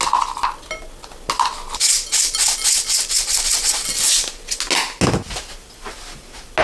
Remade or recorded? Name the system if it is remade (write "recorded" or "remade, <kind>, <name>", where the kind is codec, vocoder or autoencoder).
recorded